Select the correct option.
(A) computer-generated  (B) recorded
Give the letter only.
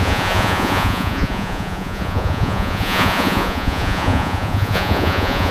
A